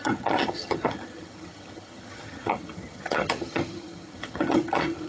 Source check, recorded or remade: remade